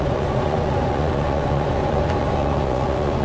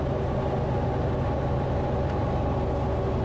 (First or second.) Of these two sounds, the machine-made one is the first